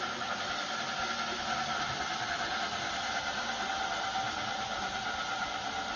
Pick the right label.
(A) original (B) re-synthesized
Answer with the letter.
A